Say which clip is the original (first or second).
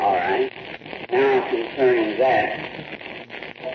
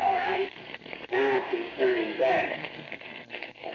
first